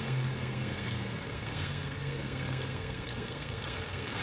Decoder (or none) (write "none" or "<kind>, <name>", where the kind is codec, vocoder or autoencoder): codec, SNAC